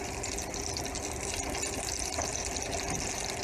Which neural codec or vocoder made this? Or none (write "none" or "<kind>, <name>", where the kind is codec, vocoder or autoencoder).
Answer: vocoder, BigVGAN v2